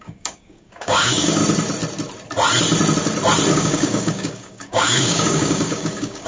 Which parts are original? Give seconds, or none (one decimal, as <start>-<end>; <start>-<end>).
1.4-3.5

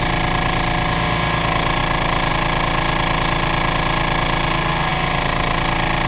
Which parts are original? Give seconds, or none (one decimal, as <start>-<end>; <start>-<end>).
0.0-6.1

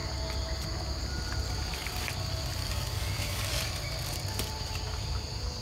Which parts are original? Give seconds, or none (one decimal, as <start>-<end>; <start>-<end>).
0.0-2.6; 3.7-5.6